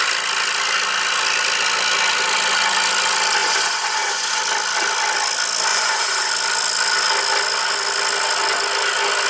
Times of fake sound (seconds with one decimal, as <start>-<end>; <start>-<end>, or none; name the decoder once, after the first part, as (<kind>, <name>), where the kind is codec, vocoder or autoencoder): 3.4-4.4 (vocoder, Vocos); 5.7-6.3